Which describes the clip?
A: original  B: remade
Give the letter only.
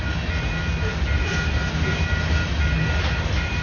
A